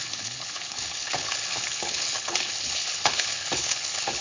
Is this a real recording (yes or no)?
no